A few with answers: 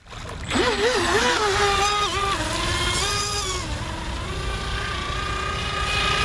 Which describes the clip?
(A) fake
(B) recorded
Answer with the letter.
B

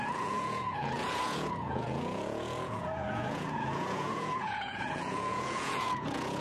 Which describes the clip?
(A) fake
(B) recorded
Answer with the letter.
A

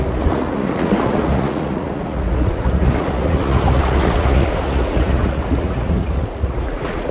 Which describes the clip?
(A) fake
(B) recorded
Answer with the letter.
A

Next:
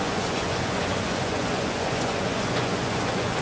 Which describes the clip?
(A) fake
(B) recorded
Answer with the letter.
A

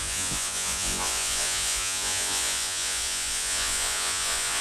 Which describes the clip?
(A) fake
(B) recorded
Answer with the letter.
A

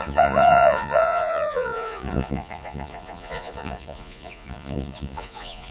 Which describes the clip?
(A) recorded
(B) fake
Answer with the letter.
B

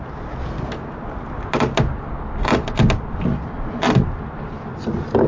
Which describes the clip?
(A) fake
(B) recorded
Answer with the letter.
B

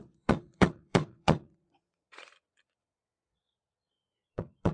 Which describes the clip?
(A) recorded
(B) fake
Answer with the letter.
B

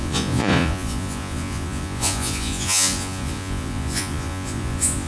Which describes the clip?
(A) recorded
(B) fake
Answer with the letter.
B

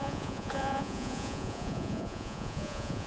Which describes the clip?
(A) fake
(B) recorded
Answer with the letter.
A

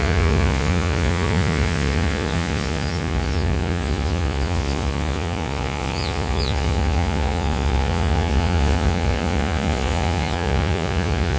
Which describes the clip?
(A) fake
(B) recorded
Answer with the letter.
A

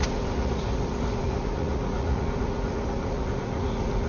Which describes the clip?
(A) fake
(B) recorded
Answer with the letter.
A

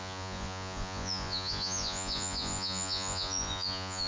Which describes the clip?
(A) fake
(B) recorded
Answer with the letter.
A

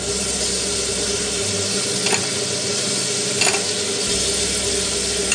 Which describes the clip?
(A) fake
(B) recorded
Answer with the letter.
B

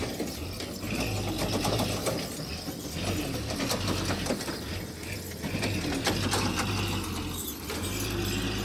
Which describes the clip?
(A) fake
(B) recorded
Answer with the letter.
B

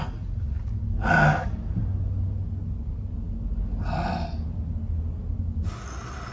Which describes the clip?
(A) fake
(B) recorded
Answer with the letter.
B